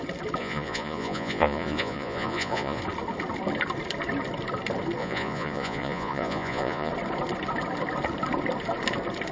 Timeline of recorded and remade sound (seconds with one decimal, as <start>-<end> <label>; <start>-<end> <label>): 0.0-0.4 recorded; 0.4-2.8 remade; 2.8-5.0 recorded; 5.0-6.9 remade; 6.9-9.3 recorded